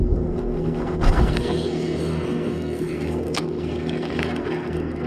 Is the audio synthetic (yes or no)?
yes